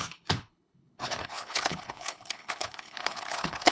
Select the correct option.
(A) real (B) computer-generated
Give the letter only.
B